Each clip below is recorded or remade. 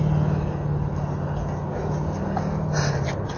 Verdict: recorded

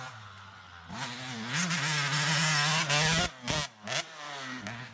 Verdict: recorded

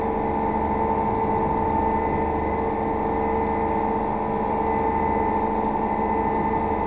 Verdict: recorded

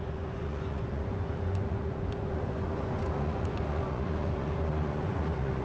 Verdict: remade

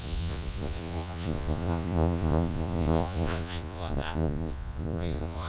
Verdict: remade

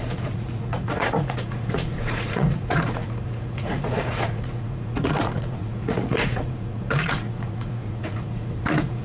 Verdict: remade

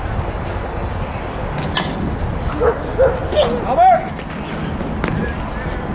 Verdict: recorded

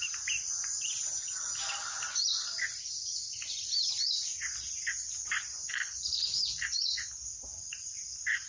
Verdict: recorded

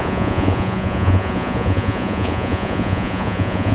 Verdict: remade